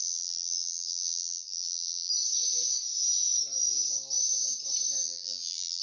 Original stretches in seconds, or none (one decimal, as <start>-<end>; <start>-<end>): 2.1-5.0